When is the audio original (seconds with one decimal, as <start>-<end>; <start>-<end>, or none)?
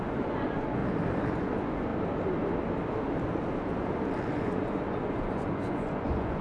0.8-1.3; 1.9-4.4